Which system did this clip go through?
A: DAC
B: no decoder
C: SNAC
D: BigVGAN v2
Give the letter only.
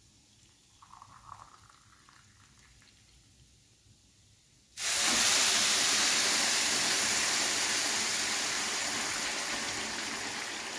B